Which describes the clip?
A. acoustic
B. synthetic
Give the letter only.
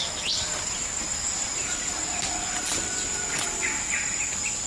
A